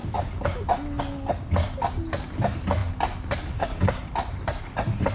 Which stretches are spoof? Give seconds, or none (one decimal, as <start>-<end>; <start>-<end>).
none